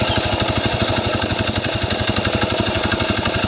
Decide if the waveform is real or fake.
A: real